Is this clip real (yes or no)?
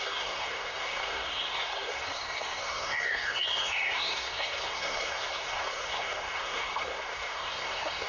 no